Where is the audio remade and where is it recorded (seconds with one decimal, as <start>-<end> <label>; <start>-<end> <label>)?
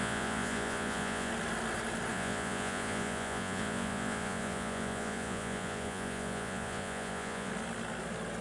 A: 0.0-1.3 remade; 1.3-2.1 recorded; 2.1-7.5 remade; 7.5-8.4 recorded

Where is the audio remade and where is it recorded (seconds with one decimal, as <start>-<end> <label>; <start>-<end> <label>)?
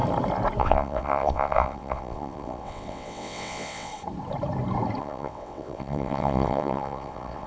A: 0.0-0.6 recorded; 0.6-3.9 remade; 3.9-5.0 recorded; 5.0-7.5 remade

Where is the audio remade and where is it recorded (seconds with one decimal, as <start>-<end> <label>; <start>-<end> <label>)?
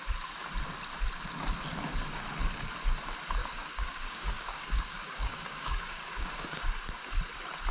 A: 0.0-3.4 recorded; 3.4-6.6 remade; 6.6-7.7 recorded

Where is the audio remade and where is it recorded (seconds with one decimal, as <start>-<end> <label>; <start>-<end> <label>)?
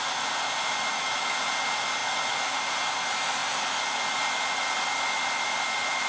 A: 0.0-0.9 recorded; 0.9-1.5 remade; 1.5-6.1 recorded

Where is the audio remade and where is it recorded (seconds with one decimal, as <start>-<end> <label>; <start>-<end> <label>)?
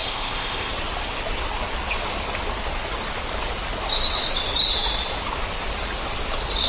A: 0.0-0.7 remade; 0.7-6.7 recorded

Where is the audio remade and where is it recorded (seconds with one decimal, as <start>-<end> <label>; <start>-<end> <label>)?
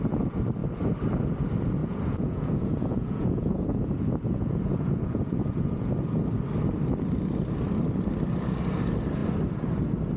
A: 0.0-1.8 recorded; 1.8-5.9 remade; 5.9-10.2 recorded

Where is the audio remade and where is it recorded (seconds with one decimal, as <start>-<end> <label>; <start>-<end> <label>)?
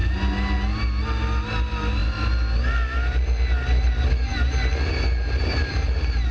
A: 0.0-6.3 recorded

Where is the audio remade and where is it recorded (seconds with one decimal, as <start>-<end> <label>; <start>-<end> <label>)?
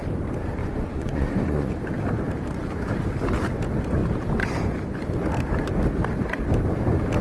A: 0.0-0.6 recorded; 0.6-1.7 remade; 1.7-7.2 recorded